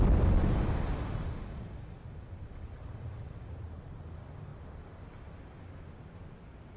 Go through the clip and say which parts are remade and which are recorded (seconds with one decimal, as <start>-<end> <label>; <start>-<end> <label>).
0.0-6.8 recorded